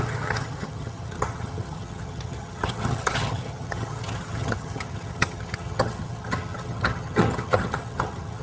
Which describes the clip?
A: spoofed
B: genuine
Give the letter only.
A